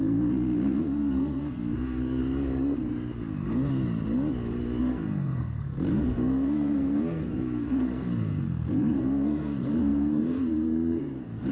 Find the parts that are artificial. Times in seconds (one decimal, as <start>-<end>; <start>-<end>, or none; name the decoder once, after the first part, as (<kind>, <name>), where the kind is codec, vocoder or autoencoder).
0.0-2.2 (codec, SNAC); 4.8-11.5